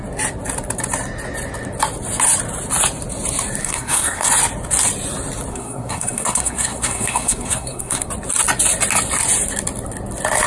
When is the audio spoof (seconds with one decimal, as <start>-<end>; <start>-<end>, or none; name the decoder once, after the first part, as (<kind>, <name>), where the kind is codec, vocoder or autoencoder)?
3.6-4.3 (codec, SNAC); 5.5-8.1